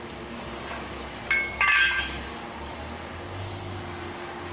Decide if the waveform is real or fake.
fake